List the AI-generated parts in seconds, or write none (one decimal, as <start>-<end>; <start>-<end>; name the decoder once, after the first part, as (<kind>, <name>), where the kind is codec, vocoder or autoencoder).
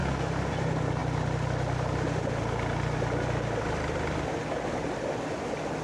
none